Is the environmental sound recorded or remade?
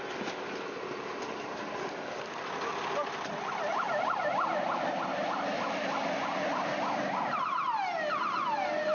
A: recorded